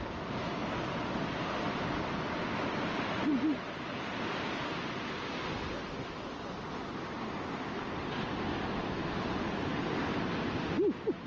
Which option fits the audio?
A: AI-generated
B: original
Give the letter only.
B